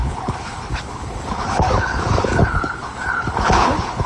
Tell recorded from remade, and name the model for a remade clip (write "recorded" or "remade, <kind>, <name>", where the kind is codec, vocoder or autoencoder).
remade, codec, HILCodec